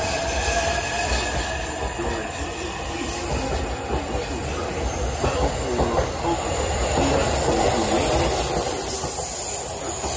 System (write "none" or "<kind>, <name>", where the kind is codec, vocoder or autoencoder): none